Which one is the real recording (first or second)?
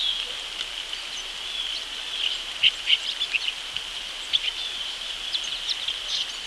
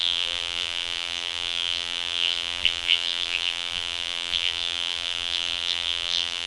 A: first